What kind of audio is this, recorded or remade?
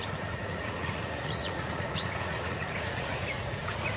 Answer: remade